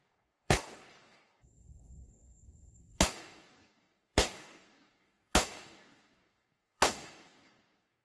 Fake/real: fake